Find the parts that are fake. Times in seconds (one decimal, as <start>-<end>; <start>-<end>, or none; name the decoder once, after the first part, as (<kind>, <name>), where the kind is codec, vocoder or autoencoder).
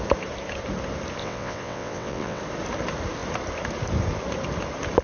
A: 1.2-2.4 (vocoder, WaveNeXt)